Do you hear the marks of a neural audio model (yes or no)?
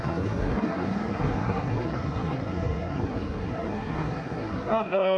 yes